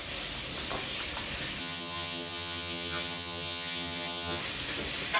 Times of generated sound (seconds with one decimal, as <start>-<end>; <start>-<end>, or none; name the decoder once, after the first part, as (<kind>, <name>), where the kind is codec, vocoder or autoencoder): 1.6-4.4 (vocoder, HiFi-GAN)